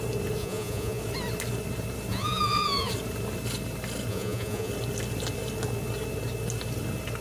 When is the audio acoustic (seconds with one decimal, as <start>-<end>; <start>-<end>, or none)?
0.0-0.4; 1.0-2.1; 2.9-4.1; 4.7-7.2